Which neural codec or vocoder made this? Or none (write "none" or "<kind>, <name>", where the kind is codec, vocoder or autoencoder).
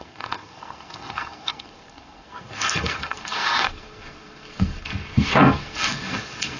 codec, SNAC